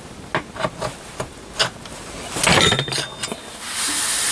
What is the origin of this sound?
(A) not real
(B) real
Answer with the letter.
B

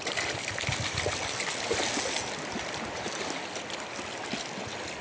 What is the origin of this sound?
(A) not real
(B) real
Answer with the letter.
B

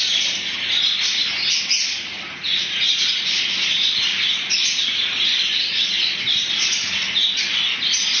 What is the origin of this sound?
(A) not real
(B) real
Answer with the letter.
B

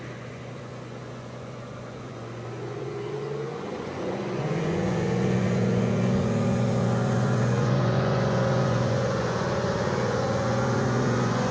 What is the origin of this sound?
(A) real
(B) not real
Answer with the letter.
B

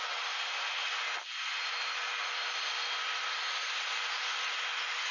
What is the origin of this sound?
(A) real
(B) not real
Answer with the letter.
A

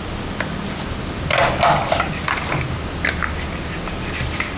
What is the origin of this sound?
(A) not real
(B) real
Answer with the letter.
B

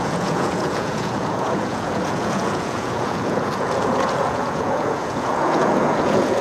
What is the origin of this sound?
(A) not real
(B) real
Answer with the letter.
A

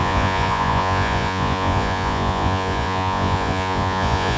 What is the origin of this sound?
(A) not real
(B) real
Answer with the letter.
A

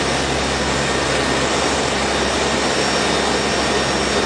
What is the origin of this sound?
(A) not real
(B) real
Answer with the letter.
B